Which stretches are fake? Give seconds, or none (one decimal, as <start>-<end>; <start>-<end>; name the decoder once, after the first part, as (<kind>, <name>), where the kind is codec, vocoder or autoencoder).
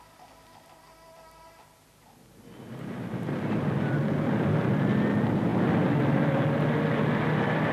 none